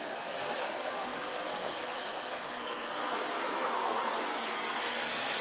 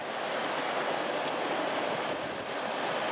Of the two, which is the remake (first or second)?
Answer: first